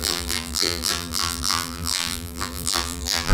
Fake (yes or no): yes